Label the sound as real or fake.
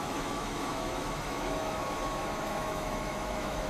fake